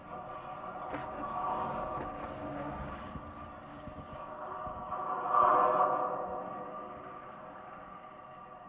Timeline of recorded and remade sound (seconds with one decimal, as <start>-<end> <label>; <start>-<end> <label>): 0.0-1.0 recorded; 1.0-3.1 remade; 3.1-3.7 recorded; 3.7-5.1 remade; 5.1-8.7 recorded